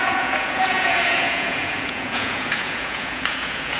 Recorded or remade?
remade